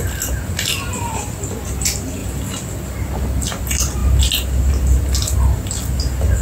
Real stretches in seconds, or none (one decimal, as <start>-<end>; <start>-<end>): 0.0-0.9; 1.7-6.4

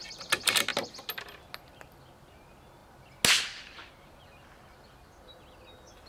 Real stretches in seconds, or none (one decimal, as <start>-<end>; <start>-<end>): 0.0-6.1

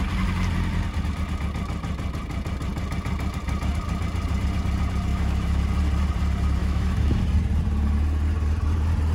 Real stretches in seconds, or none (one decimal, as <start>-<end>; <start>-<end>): 0.0-5.1; 5.6-6.6; 7.2-9.1

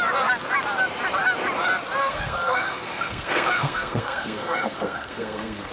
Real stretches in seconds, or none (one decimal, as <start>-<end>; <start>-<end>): 0.0-2.0